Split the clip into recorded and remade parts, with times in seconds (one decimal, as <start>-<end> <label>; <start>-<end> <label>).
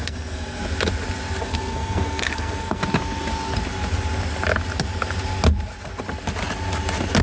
0.0-0.6 remade; 0.6-1.4 recorded; 1.4-2.8 remade; 2.8-7.2 recorded